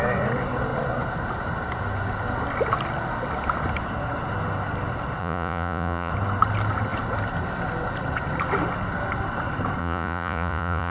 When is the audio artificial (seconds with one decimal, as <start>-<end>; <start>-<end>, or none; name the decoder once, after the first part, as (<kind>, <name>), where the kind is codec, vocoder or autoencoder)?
5.2-6.1 (vocoder, Vocos); 9.8-10.9